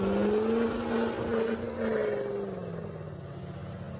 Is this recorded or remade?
recorded